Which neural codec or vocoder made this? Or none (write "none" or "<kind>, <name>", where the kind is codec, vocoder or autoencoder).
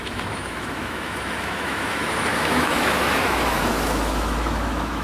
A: autoencoder, DAC-VAE